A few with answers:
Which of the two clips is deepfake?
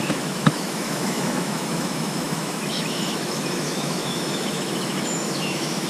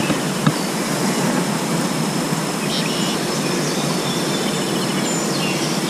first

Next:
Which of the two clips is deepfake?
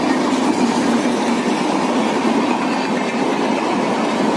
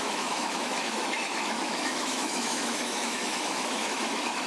second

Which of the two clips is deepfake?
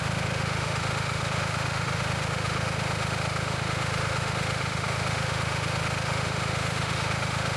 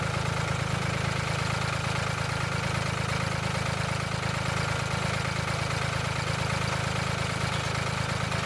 first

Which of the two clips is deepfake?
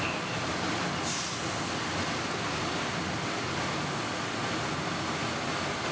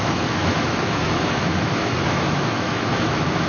second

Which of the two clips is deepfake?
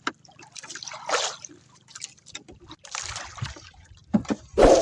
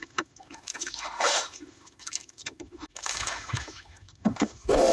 second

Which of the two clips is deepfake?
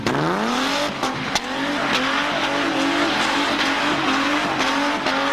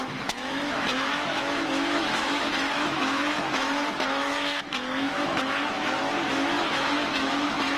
second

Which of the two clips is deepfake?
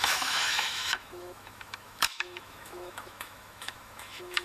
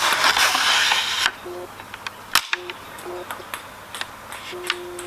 first